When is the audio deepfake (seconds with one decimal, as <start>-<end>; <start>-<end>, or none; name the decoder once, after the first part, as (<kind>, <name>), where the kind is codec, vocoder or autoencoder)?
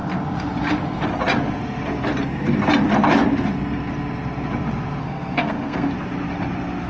5.0-5.9 (codec, SNAC)